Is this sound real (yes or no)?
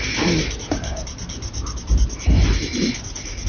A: yes